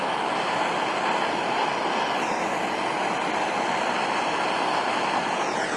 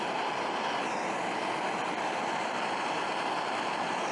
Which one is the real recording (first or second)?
first